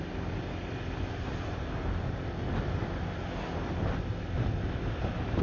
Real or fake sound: real